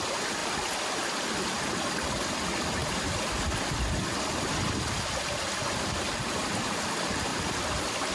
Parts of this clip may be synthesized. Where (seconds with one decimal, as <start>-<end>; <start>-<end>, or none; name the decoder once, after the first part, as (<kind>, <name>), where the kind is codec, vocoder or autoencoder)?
0.0-8.1 (vocoder, BigVGAN v2)